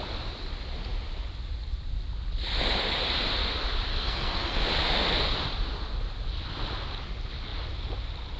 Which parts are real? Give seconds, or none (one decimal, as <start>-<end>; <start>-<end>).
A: 0.0-3.9; 4.6-8.4